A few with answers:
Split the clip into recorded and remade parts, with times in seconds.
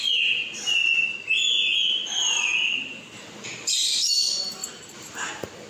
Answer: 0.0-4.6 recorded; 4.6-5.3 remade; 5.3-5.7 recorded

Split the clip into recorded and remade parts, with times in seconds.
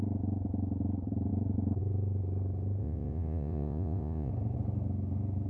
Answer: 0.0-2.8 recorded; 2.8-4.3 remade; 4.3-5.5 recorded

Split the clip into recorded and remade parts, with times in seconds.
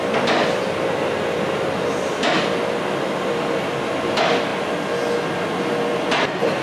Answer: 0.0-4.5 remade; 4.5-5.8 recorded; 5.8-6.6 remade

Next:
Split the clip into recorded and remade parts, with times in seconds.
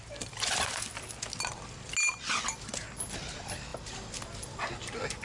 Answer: 0.0-5.2 recorded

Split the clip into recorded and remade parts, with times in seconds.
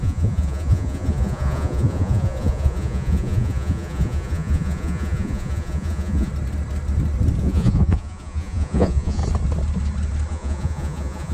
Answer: 0.0-6.3 remade; 6.3-7.4 recorded; 7.4-9.2 remade; 9.2-10.3 recorded; 10.3-11.3 remade